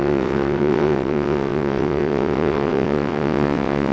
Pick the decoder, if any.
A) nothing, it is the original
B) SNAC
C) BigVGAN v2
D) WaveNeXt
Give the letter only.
D